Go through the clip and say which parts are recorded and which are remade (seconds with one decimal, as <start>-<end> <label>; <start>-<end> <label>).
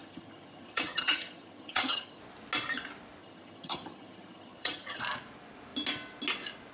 0.0-2.2 remade; 2.2-3.2 recorded; 3.2-5.0 remade; 5.0-6.7 recorded